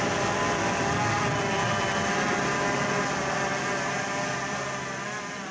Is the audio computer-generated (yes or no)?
no